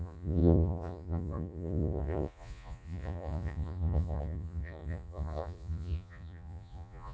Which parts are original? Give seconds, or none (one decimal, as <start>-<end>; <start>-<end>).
none

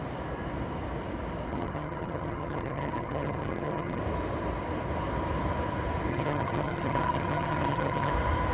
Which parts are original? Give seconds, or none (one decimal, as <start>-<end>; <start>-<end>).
0.0-1.5; 4.0-6.1; 8.1-8.5

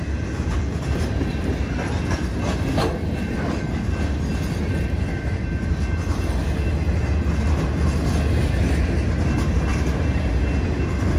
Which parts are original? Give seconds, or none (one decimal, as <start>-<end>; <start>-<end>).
0.0-11.2

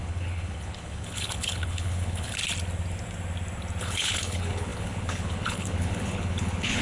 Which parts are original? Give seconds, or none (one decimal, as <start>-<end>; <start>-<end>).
2.4-3.8

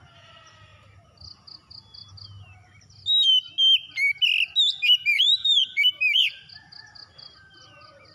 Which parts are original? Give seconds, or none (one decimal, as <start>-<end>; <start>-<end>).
0.0-5.1; 6.5-8.1